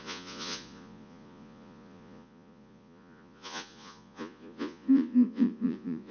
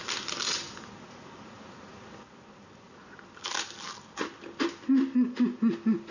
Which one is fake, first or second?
first